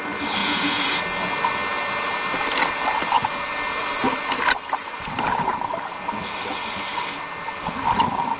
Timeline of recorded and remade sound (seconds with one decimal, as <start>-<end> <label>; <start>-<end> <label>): 0.0-0.4 recorded; 0.4-1.0 remade; 1.0-8.4 recorded